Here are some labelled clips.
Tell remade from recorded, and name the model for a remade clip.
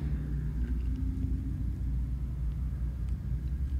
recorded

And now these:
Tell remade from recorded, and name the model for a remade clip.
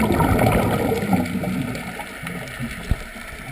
recorded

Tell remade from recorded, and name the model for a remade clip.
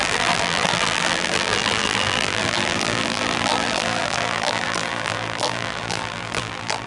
remade, vocoder, BigVGAN v2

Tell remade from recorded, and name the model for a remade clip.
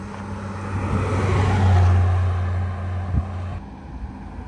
recorded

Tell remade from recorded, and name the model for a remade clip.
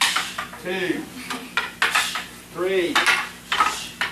recorded